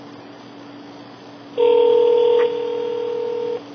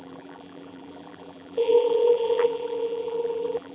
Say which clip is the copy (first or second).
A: second